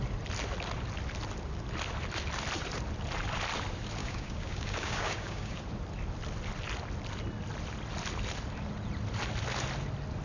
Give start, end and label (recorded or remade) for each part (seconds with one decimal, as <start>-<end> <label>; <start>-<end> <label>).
0.0-4.0 recorded; 4.0-5.6 remade; 5.6-10.2 recorded